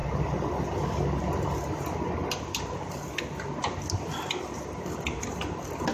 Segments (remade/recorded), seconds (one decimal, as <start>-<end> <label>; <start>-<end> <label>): 0.0-2.2 recorded; 2.2-3.2 remade; 3.2-5.9 recorded